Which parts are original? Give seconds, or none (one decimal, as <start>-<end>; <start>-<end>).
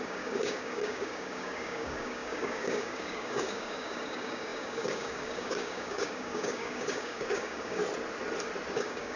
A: 7.8-8.7